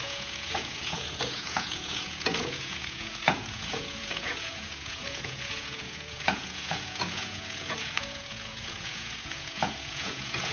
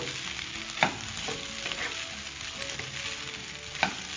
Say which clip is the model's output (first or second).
first